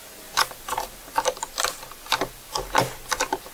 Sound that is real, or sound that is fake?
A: real